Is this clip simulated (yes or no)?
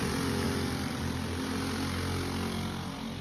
no